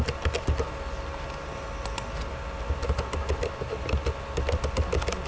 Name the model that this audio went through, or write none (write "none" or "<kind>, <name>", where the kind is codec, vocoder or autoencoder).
none